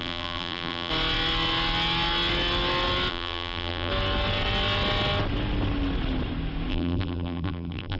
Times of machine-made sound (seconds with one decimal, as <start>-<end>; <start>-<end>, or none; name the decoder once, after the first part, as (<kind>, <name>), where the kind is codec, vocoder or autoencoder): 0.0-0.9 (vocoder, BigVGAN v2); 3.1-3.9; 6.7-8.0